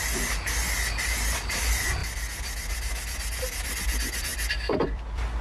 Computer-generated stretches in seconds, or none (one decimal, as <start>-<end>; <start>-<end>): none